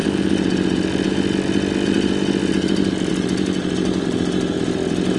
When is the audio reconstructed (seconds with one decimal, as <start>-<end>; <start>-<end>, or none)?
none